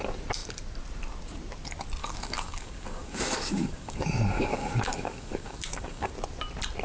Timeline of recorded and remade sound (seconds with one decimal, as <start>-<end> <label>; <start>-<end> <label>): 0.0-2.0 recorded; 2.0-6.1 remade; 6.1-6.8 recorded